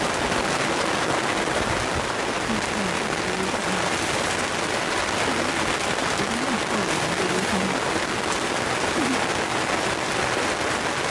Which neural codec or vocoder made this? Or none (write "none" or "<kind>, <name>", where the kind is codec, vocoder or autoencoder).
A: none